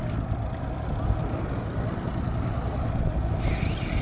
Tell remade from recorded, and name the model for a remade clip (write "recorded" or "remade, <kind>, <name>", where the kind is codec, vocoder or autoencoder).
recorded